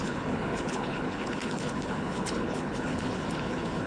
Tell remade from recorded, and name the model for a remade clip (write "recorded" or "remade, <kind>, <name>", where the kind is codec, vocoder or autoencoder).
remade, codec, HILCodec